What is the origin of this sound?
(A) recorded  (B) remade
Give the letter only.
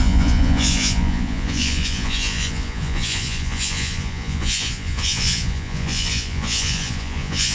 B